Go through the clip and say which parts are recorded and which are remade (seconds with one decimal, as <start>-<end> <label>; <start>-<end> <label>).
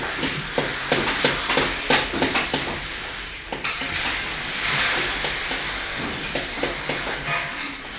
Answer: 0.0-0.7 recorded; 0.7-3.0 remade; 3.0-3.5 recorded; 3.5-7.0 remade; 7.0-8.0 recorded